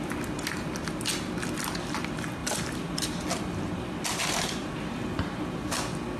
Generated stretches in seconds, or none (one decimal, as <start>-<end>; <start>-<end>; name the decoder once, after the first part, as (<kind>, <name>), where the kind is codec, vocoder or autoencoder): 2.4-5.5 (vocoder, BigVGAN v2)